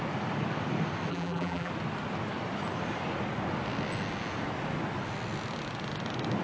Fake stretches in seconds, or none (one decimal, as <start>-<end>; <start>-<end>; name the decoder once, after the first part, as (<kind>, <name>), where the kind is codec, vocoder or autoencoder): 1.1-1.7 (vocoder, BigVGAN v2)